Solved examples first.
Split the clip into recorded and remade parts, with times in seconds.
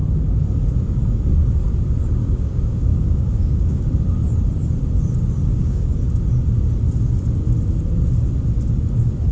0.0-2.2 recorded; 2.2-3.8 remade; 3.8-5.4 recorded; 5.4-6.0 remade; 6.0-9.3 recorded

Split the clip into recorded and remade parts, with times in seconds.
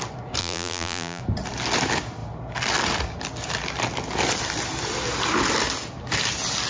0.0-0.4 recorded; 0.4-1.2 remade; 1.2-6.7 recorded